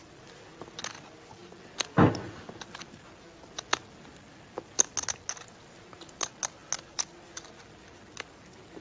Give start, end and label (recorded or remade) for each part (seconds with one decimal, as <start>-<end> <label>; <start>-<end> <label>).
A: 0.0-8.8 recorded